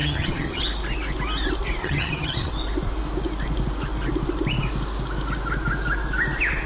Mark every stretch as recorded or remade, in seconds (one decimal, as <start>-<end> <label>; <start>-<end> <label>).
0.0-0.6 remade; 0.6-1.8 recorded; 1.8-2.5 remade; 2.5-6.7 recorded